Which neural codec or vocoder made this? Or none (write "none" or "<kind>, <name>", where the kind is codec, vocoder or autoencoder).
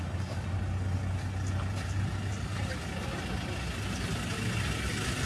none